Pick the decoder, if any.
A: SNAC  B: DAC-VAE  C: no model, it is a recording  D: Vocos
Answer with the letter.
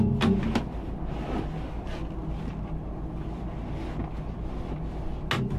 C